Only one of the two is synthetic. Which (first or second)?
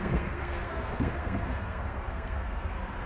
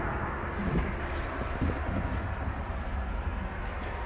first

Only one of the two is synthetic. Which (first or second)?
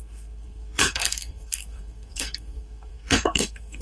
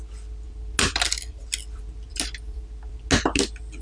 first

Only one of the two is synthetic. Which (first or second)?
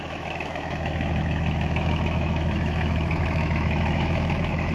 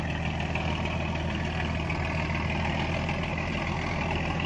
first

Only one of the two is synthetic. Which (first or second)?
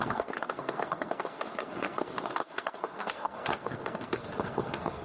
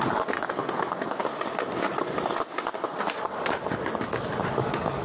first